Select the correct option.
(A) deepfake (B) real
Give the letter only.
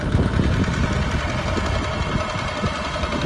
B